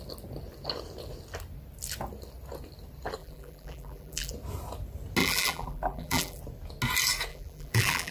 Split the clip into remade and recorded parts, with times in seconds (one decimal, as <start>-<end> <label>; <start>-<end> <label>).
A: 0.0-3.2 recorded; 3.2-4.3 remade; 4.3-5.2 recorded; 5.2-6.4 remade; 6.4-7.3 recorded; 7.3-8.1 remade